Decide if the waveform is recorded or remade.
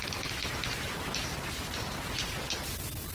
recorded